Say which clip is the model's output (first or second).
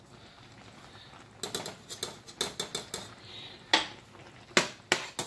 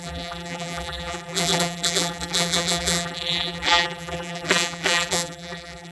second